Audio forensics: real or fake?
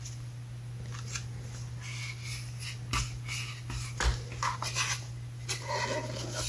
real